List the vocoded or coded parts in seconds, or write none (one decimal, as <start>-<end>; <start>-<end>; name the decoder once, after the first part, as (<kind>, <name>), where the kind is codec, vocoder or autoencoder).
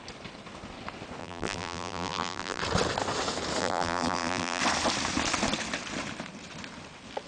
1.2-2.6 (vocoder, BigVGAN v2); 3.6-4.6